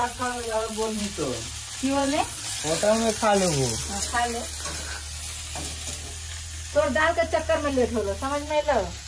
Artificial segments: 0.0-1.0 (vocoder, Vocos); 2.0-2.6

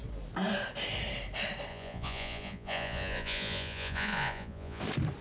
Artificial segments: 1.7-4.8 (vocoder, Vocos)

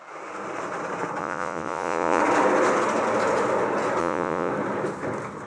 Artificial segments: 1.2-2.2 (vocoder, Vocos); 4.0-4.5

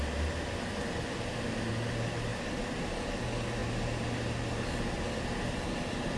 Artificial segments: none